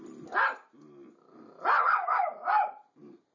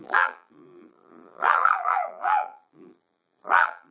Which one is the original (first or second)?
first